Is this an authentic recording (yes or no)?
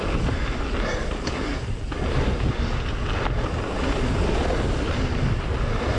yes